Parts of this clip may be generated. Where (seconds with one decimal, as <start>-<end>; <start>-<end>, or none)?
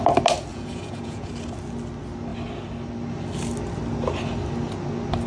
0.5-1.3